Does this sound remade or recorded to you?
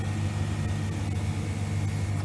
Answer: recorded